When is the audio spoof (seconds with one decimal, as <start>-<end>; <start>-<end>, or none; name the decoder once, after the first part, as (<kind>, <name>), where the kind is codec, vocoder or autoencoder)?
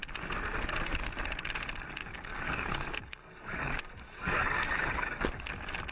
2.0-5.5 (codec, DAC)